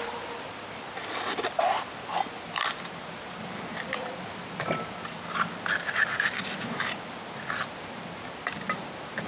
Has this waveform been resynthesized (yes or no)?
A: no